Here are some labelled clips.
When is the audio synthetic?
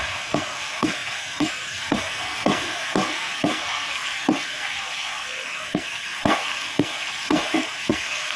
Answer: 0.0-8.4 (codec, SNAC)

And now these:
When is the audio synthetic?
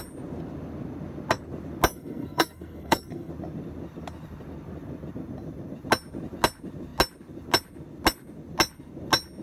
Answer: 1.9-3.3 (codec, SNAC)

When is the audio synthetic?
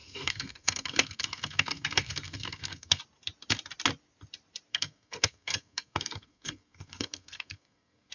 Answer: 0.0-3.0 (codec, SNAC); 4.7-8.1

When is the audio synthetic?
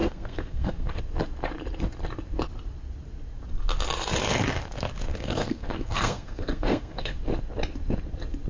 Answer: 0.0-1.0 (codec, SNAC); 5.1-7.2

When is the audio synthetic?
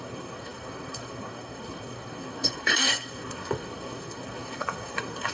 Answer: 0.0-5.3 (codec, SNAC)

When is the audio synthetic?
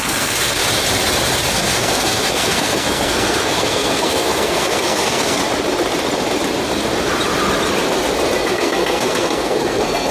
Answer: 0.0-0.6 (codec, SNAC); 1.5-5.4; 8.5-10.1